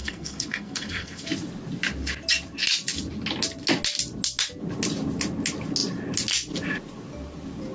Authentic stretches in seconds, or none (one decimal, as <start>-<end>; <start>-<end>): 1.3-7.7